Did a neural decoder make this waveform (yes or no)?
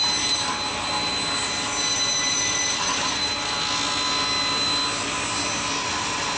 no